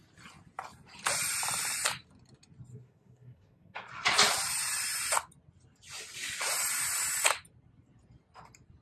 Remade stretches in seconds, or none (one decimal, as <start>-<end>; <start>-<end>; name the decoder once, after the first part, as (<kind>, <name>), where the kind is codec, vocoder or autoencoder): 2.7-3.9 (codec, SNAC)